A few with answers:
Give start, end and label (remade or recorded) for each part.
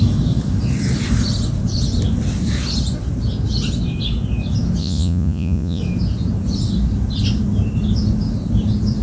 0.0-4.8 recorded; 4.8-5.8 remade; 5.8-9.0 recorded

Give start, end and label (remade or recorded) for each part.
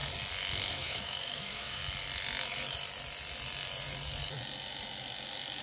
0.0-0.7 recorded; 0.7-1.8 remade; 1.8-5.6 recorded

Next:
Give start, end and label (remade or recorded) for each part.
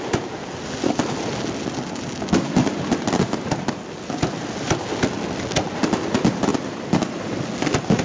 0.0-8.0 recorded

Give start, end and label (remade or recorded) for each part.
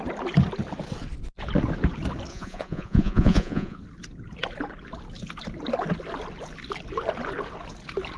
0.0-2.3 recorded; 2.3-3.8 remade; 3.8-8.2 recorded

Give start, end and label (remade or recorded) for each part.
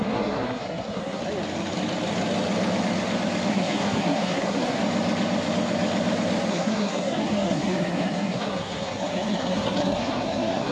0.0-1.2 remade; 1.2-3.5 recorded; 3.5-4.8 remade; 4.8-6.5 recorded; 6.5-10.7 remade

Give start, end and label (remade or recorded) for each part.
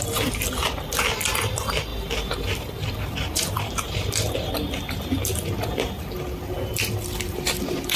0.0-1.9 remade; 1.9-2.5 recorded; 2.5-8.0 remade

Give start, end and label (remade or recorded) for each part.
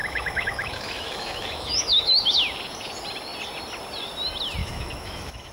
0.0-2.4 remade; 2.4-4.6 recorded; 4.6-5.5 remade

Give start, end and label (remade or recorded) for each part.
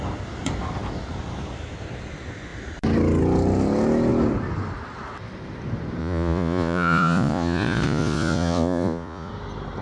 0.0-6.0 recorded; 6.0-9.3 remade; 9.3-9.8 recorded